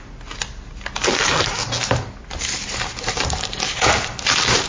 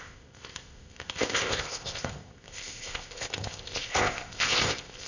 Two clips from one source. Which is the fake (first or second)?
second